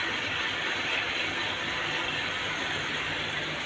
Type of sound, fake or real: real